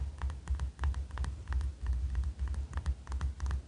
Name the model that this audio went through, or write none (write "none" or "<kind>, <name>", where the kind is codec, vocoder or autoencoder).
none